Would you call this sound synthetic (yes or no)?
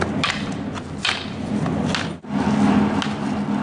no